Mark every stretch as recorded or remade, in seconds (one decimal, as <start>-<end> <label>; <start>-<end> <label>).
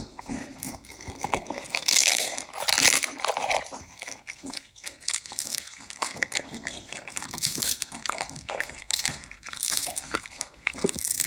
0.0-2.5 remade; 2.5-3.8 recorded; 3.8-11.3 remade